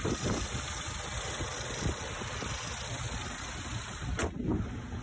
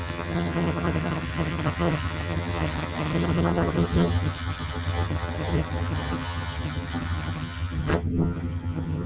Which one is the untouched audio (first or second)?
first